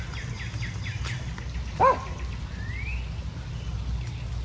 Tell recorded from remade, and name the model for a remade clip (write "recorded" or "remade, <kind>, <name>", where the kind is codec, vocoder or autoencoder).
recorded